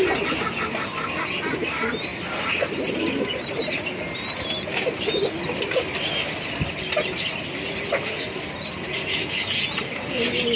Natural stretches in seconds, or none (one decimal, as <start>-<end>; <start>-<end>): 0.0-10.6